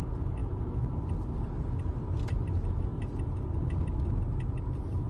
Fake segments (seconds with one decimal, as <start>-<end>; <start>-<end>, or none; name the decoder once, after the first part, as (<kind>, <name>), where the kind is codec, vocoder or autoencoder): none